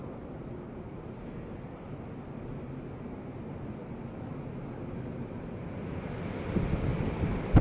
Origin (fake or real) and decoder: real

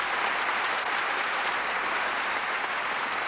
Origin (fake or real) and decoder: real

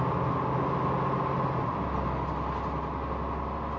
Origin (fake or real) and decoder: real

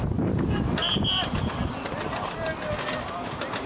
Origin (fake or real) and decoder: real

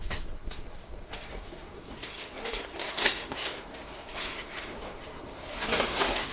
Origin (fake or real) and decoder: fake, codec, SNAC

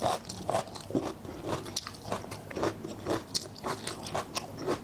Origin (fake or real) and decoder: real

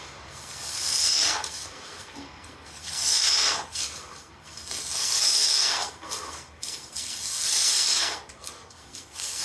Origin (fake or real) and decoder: fake, codec, SNAC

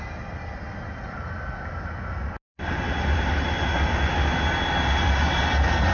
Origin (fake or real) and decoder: real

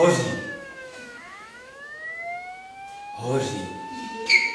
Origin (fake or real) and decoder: fake, autoencoder, DAC-VAE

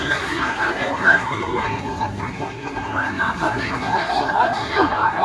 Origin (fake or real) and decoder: fake, codec, SNAC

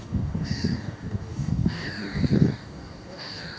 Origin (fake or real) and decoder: fake, codec, DAC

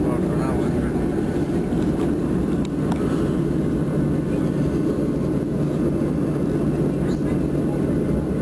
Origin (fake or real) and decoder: real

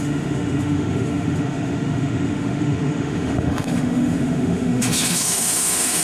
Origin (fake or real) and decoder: fake, autoencoder, DAC-VAE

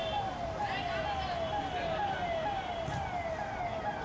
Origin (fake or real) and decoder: real